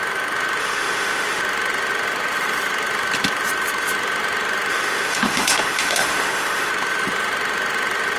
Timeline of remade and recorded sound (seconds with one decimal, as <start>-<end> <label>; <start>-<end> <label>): 0.0-0.6 recorded; 0.6-1.4 remade; 1.4-4.7 recorded; 4.7-6.7 remade; 6.7-8.2 recorded